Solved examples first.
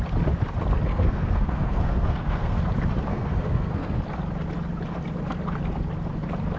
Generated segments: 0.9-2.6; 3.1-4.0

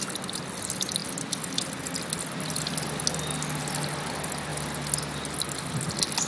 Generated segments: none

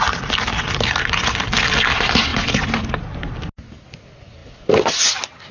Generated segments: none